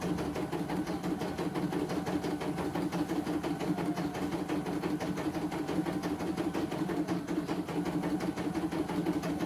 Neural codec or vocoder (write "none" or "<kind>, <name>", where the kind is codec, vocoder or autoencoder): none